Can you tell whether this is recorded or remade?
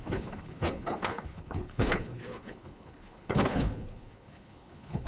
remade